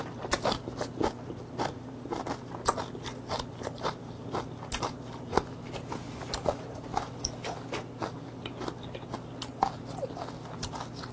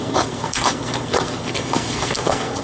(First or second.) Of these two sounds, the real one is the first